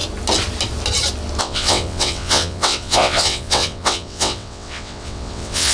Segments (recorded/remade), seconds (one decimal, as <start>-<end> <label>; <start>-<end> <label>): 0.0-1.4 recorded; 1.4-5.7 remade

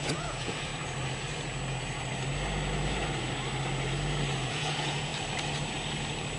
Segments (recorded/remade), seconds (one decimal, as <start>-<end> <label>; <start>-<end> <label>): 0.0-0.7 remade; 0.7-4.5 recorded; 4.5-5.1 remade; 5.1-6.4 recorded

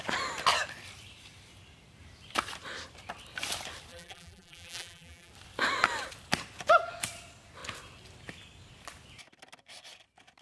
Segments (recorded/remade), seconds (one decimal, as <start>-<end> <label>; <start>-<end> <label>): 0.0-3.9 recorded; 3.9-5.3 remade; 5.3-10.4 recorded